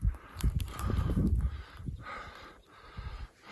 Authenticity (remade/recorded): remade